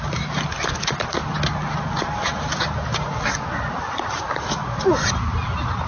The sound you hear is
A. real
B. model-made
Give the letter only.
A